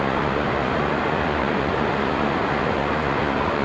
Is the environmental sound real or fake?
fake